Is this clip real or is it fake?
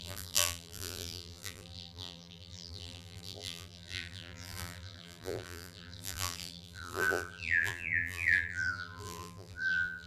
fake